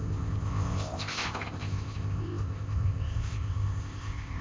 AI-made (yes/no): yes